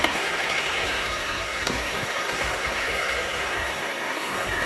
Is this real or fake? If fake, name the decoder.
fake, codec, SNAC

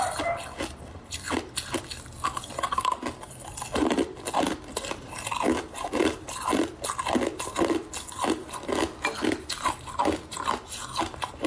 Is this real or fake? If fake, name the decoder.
real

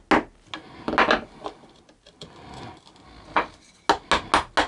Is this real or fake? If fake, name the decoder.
real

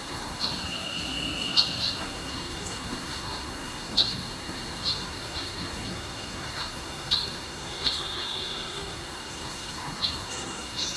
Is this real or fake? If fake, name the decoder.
fake, codec, SNAC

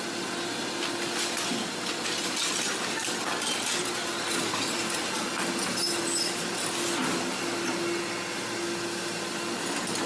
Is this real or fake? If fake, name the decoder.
real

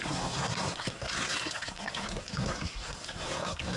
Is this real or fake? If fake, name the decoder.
fake, codec, SNAC